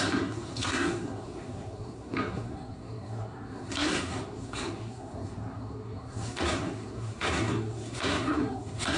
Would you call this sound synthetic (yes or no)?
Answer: yes